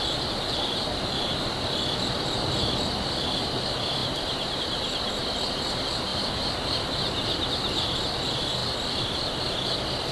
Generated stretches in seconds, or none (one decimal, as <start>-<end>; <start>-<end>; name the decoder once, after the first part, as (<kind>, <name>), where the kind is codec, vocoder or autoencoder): 6.1-7.5 (vocoder, BigVGAN v2); 8.6-9.4